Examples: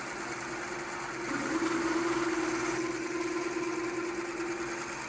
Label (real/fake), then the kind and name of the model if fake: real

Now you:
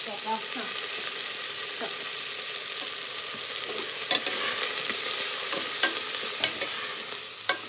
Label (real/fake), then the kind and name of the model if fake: real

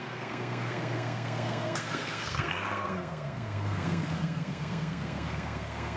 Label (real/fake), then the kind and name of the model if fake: fake, codec, SNAC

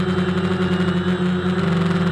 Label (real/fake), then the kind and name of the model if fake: real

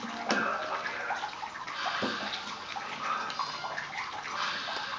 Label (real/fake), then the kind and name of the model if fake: real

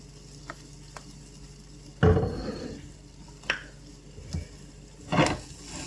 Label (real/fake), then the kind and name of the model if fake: real